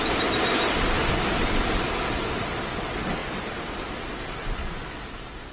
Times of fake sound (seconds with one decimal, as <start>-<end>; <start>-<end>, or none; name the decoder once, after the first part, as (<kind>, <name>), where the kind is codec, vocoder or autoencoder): none